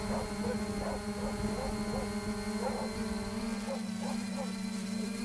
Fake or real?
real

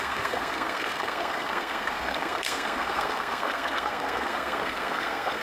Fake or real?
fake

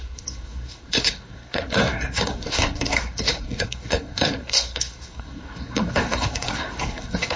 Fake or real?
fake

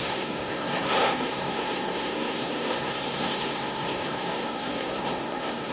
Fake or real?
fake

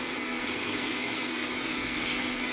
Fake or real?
fake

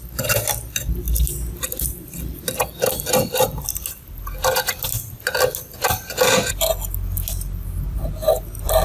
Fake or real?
real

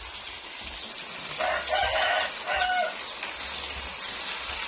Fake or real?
real